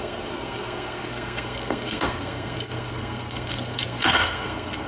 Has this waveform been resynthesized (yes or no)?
yes